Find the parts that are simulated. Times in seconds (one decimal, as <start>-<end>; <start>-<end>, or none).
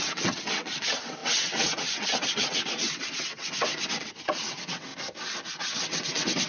0.0-4.9; 5.5-6.5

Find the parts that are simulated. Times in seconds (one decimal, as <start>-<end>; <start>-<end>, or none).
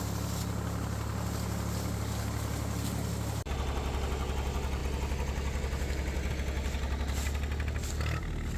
none